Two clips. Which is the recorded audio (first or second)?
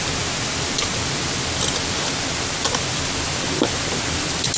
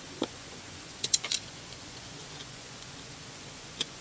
first